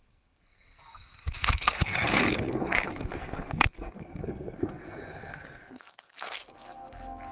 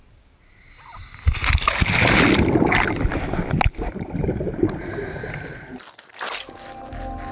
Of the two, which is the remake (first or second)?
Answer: first